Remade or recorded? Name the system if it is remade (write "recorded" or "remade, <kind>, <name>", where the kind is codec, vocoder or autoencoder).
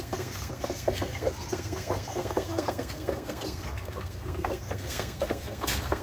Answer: remade, codec, SNAC